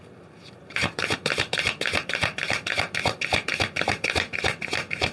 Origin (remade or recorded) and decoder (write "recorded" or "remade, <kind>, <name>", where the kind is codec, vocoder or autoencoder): remade, vocoder, BigVGAN v2